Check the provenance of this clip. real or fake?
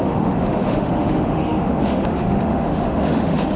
fake